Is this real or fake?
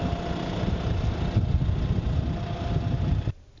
real